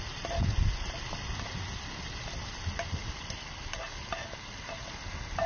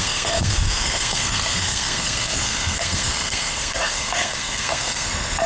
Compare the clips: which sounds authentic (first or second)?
first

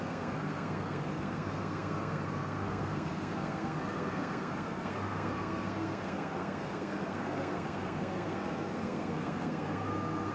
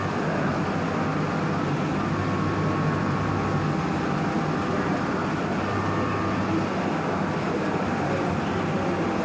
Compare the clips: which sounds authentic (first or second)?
second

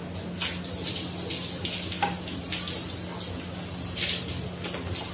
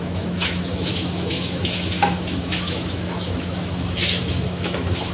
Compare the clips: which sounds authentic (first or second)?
first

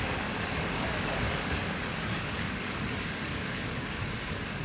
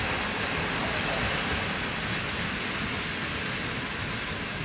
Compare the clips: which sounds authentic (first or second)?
second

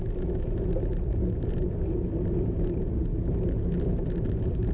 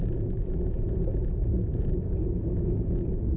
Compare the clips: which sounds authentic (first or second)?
first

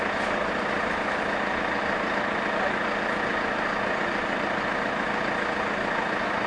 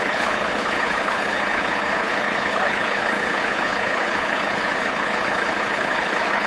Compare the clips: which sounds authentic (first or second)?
first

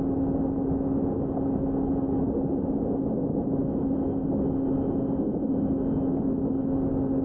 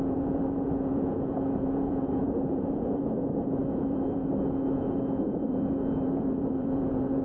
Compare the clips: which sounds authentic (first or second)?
first